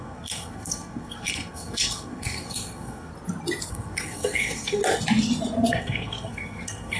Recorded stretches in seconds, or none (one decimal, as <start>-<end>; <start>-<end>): 3.1-3.7; 4.8-5.7